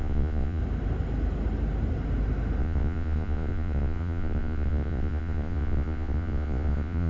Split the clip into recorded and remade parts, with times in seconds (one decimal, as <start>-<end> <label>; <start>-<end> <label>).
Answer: 0.0-0.6 remade; 0.6-2.6 recorded; 2.6-7.1 remade